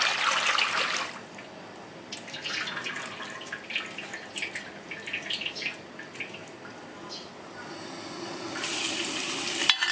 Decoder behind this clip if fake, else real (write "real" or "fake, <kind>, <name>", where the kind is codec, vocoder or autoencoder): real